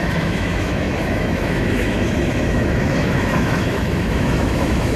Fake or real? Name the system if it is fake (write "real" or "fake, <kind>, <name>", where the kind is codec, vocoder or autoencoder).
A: fake, autoencoder, DAC-VAE